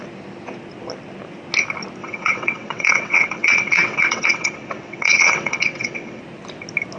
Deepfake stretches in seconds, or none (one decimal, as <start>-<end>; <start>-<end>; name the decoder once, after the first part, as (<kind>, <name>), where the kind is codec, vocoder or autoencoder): 2.0-6.2 (vocoder, WaveNeXt)